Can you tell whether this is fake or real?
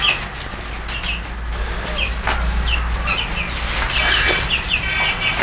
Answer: real